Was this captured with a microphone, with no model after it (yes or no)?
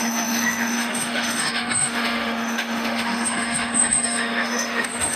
no